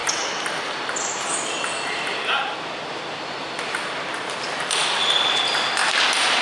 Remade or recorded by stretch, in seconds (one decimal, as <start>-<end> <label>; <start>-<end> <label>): 0.0-6.4 recorded

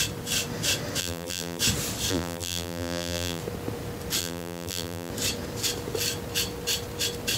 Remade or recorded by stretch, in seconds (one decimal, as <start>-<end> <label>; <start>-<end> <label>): 0.0-1.0 recorded; 1.0-1.6 remade; 1.6-2.1 recorded; 2.1-3.4 remade; 3.4-4.2 recorded; 4.2-5.1 remade; 5.1-7.4 recorded